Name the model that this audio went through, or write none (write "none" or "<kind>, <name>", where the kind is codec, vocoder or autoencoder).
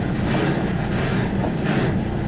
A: none